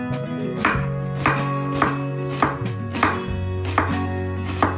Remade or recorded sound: recorded